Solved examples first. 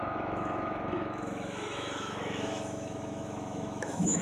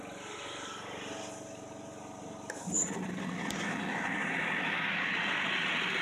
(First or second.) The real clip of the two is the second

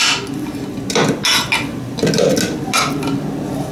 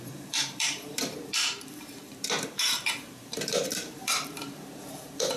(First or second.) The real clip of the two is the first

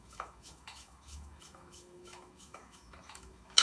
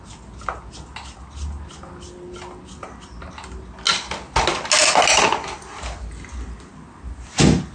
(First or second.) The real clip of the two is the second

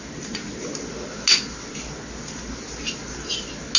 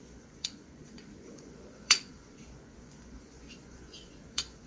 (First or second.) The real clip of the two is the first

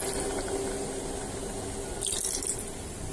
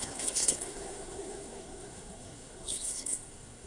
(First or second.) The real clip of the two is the first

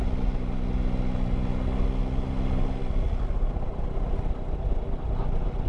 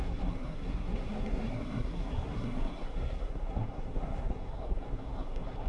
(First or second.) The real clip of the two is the first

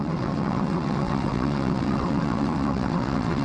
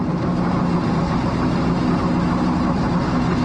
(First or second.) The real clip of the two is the second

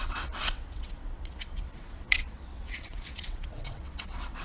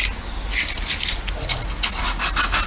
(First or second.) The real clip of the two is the second